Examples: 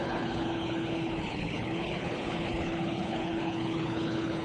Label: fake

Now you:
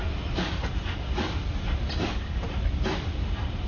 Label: real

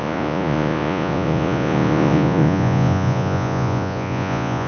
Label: fake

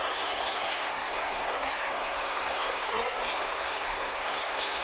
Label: fake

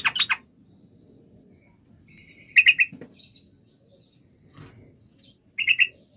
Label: real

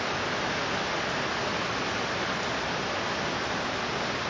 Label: real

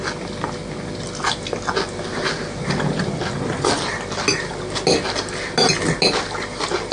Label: real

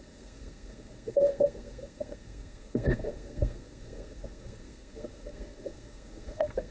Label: fake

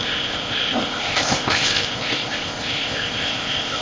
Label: fake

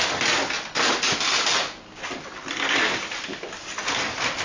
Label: real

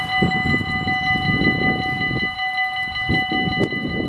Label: real